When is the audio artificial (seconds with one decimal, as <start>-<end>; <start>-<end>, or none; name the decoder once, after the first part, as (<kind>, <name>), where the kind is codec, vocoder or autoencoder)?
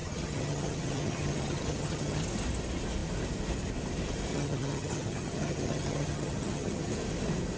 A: 0.0-2.2 (vocoder, HiFi-GAN); 4.3-6.9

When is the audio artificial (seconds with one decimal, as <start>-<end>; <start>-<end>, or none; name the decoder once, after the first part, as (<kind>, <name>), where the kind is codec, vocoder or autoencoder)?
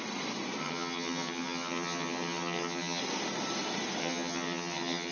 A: 0.6-3.0 (vocoder, HiFi-GAN); 4.0-5.1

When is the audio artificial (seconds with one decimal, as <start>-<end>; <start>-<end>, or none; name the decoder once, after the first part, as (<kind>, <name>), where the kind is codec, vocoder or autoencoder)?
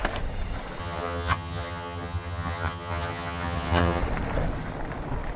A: 0.8-4.0 (vocoder, HiFi-GAN)